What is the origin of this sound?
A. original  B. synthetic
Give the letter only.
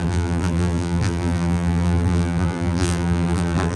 B